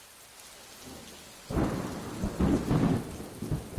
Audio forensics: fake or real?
real